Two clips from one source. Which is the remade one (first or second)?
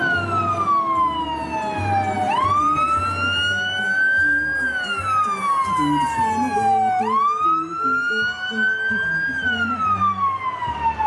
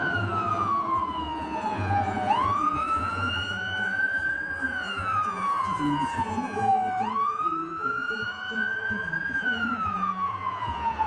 second